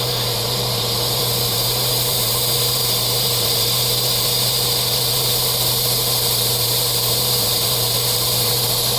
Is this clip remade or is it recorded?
remade